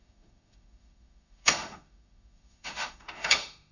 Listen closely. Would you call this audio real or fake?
fake